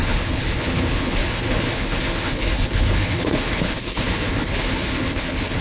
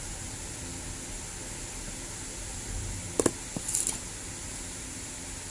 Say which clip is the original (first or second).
second